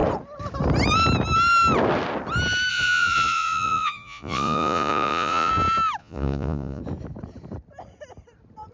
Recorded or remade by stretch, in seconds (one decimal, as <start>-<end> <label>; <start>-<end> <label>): 0.0-2.7 recorded; 2.7-5.5 remade; 5.5-6.0 recorded; 6.0-6.8 remade; 6.8-8.7 recorded